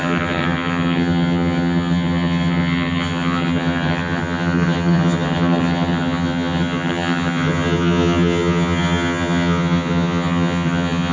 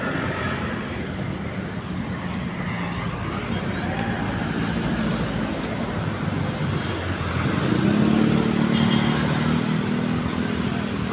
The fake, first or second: first